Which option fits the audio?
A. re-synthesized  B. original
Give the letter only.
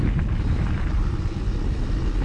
B